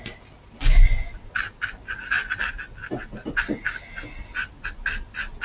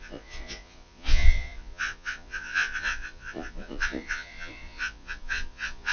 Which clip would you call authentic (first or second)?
first